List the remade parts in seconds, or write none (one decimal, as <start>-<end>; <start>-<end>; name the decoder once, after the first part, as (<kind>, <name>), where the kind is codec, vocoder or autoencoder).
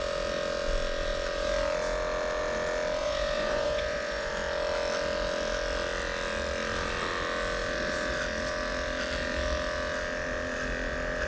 3.0-4.3 (vocoder, Vocos)